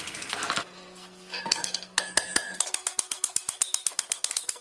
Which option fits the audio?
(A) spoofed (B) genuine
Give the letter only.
A